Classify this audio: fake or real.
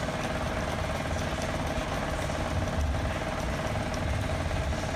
real